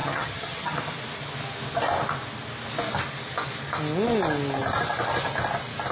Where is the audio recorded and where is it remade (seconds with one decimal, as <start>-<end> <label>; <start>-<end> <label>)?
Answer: 0.0-0.8 remade; 0.8-5.9 recorded